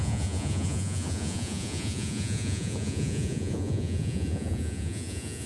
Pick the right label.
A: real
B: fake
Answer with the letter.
B